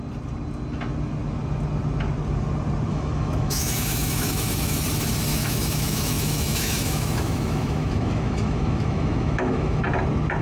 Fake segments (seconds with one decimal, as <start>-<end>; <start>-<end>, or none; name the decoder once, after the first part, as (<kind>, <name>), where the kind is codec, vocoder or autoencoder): 2.9-4.8 (autoencoder, DAC-VAE); 5.3-9.8